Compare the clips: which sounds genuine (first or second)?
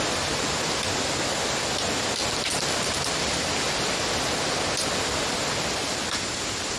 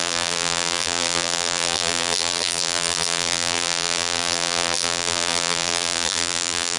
first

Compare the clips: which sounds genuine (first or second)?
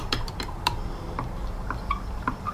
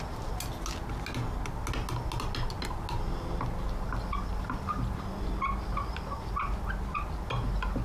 second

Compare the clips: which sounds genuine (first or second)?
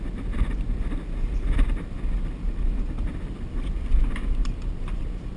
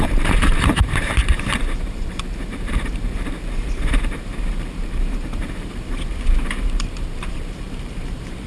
first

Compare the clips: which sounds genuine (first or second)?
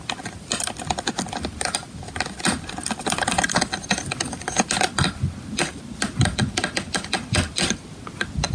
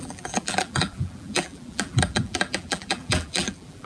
first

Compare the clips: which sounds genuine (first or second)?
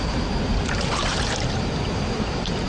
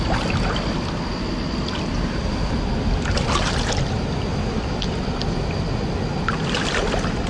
second